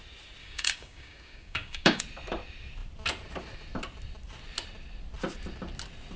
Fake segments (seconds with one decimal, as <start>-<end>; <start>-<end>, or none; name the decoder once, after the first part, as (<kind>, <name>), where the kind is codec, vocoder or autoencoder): 0.4-2.0 (codec, DAC)